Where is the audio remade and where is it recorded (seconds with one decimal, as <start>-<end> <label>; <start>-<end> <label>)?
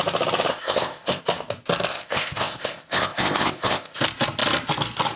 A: 0.0-0.5 recorded; 0.5-1.2 remade; 1.2-1.9 recorded; 1.9-4.0 remade; 4.0-5.2 recorded